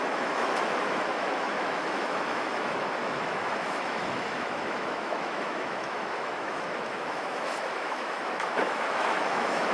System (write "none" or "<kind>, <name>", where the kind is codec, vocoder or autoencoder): autoencoder, DAC-VAE